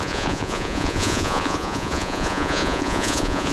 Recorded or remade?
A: remade